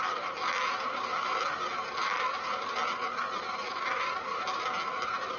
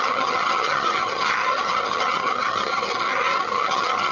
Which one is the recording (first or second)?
first